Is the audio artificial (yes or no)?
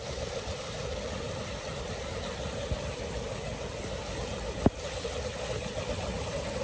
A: no